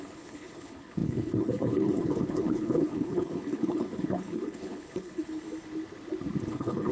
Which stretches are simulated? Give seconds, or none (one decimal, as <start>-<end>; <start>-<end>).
0.0-5.4; 6.5-6.9